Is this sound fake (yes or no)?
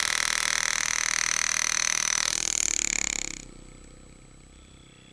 yes